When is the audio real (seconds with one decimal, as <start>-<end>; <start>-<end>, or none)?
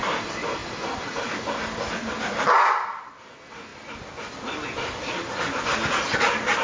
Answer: 0.0-6.6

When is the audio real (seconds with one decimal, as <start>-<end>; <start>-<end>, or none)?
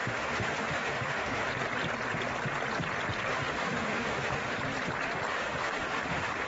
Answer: 1.5-3.3; 4.6-5.3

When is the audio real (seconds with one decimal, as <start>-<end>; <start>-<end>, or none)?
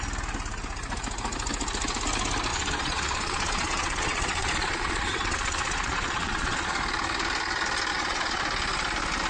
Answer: 0.0-2.5; 6.8-7.9; 8.4-9.3